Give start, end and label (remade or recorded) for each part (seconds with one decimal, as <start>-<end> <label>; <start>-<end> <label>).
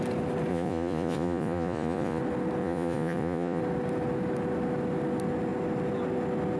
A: 0.0-0.5 recorded; 0.5-2.2 remade; 2.2-2.6 recorded; 2.6-3.6 remade; 3.6-6.6 recorded